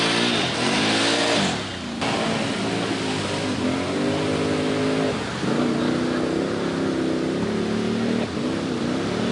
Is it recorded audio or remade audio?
recorded